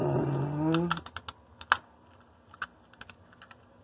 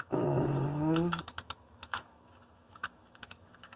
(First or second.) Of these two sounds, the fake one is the second